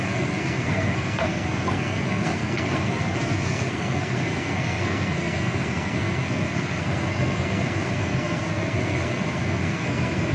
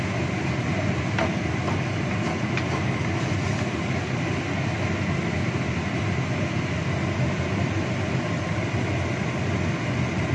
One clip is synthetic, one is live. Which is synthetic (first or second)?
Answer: first